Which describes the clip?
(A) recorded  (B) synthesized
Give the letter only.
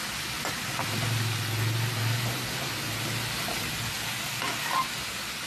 A